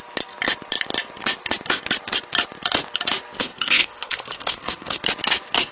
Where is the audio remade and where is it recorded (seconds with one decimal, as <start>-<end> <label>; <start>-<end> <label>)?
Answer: 0.0-3.4 recorded; 3.4-5.0 remade; 5.0-5.7 recorded